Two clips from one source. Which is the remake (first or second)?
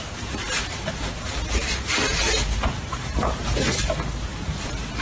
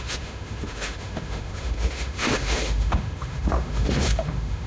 second